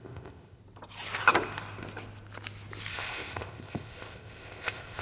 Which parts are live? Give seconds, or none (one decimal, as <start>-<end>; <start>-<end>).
0.6-2.9